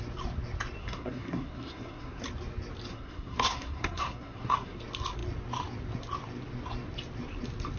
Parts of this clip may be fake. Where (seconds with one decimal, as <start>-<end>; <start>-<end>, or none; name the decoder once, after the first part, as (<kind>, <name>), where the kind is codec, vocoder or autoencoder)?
0.8-2.2 (codec, SNAC); 2.9-4.8